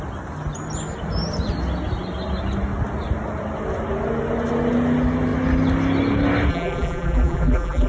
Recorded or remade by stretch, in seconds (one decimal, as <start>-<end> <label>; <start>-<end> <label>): 0.0-6.5 recorded; 6.5-7.9 remade